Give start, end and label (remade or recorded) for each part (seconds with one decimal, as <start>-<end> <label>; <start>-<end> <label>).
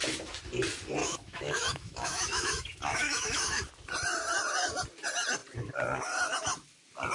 0.0-1.0 recorded; 1.0-3.7 remade; 3.7-7.1 recorded